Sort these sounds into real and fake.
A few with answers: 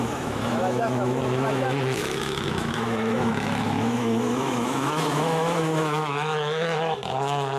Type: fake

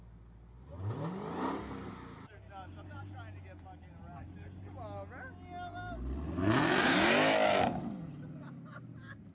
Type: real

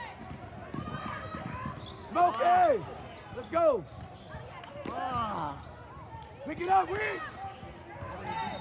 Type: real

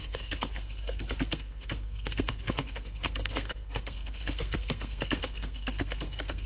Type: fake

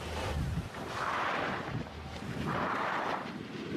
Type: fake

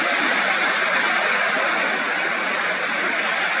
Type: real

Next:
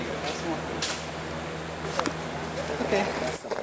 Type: real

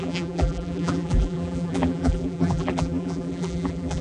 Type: fake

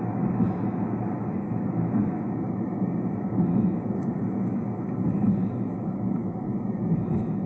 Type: fake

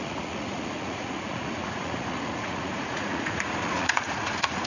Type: fake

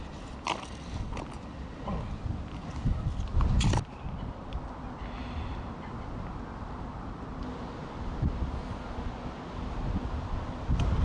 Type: real